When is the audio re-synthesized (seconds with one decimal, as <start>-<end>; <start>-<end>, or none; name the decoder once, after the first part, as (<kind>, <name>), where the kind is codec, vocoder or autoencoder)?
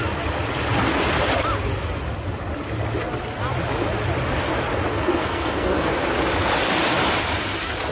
4.9-5.9 (codec, SNAC)